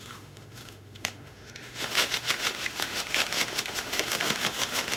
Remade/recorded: remade